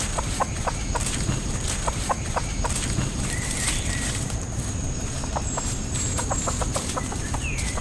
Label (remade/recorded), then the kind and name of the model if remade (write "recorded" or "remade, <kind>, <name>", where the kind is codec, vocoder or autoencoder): remade, vocoder, BigVGAN v2